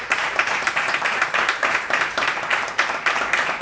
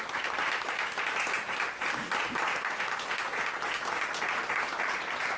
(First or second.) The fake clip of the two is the first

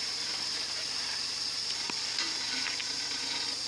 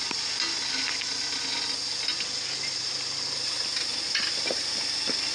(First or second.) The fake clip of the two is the first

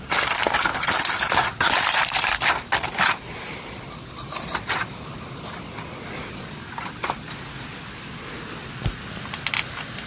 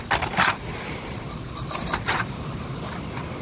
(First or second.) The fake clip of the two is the second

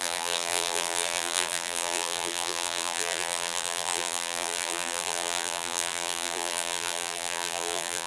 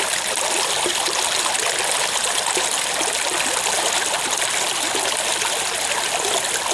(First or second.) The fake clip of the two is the first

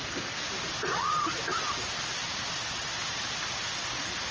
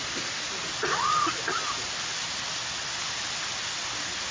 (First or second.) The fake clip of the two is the first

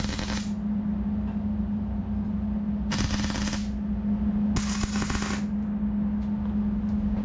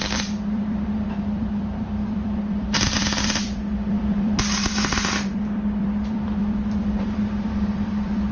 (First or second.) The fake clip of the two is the second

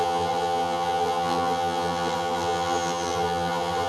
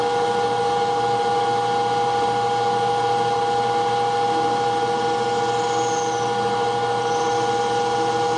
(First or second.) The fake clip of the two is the first